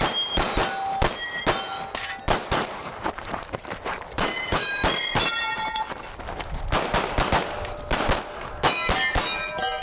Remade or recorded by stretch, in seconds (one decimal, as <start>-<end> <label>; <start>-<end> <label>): 0.0-0.6 remade; 0.6-2.5 recorded; 2.5-4.8 remade; 4.8-9.8 recorded